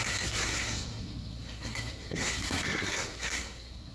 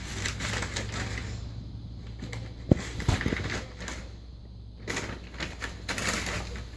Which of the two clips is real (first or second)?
second